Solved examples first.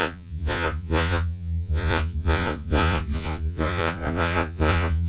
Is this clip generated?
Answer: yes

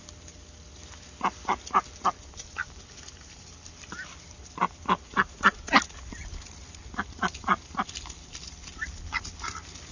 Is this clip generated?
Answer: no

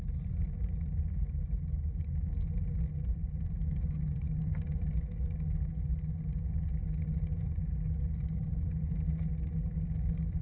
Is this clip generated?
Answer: no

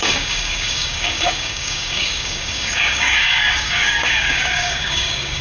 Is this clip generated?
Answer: yes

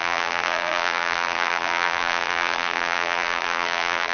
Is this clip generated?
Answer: yes